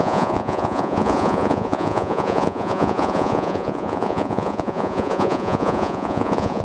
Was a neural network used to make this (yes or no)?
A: yes